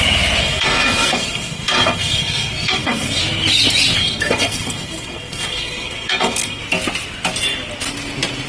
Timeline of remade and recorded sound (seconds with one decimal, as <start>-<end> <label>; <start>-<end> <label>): 0.0-0.4 recorded; 0.4-3.2 remade; 3.2-4.0 recorded; 4.0-6.6 remade; 6.6-8.5 recorded